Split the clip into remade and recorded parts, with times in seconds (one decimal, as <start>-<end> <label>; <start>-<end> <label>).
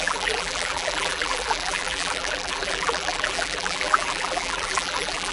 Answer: 0.0-5.3 remade